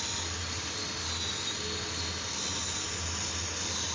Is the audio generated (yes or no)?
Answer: no